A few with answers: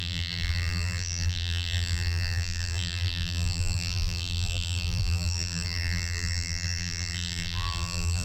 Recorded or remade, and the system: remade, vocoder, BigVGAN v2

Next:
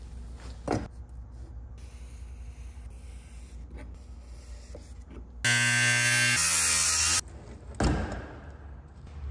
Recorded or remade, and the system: recorded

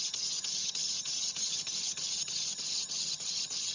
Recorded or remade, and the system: remade, vocoder, HiFi-GAN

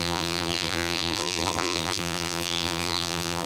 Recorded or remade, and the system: remade, vocoder, BigVGAN v2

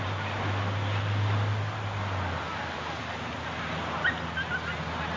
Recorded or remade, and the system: recorded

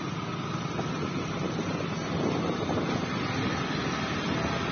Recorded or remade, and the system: recorded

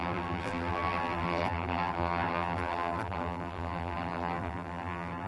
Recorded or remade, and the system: remade, vocoder, BigVGAN v2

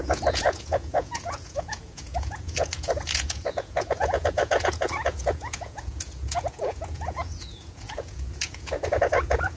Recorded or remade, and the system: remade, vocoder, Vocos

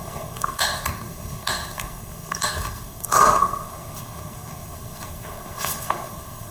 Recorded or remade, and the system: remade, codec, SNAC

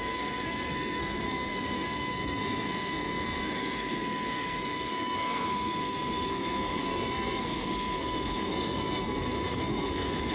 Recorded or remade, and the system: remade, codec, SNAC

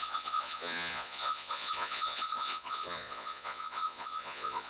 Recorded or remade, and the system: remade, vocoder, Vocos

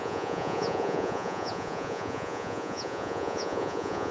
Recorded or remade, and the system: remade, vocoder, Vocos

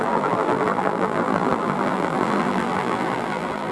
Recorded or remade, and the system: remade, vocoder, BigVGAN v2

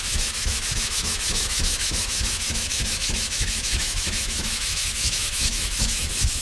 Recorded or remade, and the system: remade, autoencoder, DAC-VAE